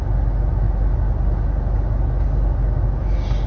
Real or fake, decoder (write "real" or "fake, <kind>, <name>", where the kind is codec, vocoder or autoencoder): real